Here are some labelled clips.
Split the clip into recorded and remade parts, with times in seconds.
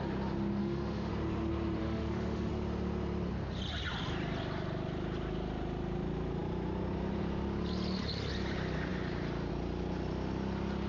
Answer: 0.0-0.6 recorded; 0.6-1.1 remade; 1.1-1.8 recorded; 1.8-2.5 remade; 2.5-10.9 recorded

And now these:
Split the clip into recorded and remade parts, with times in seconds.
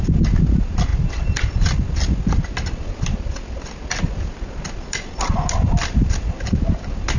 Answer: 0.0-7.2 recorded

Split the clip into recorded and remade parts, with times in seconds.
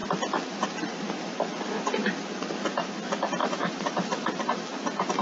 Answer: 0.0-3.4 recorded; 3.4-4.3 remade; 4.3-5.2 recorded